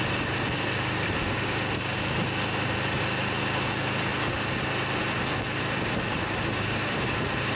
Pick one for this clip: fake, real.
real